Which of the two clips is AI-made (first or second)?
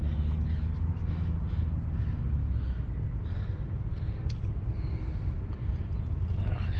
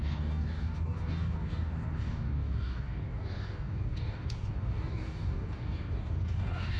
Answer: second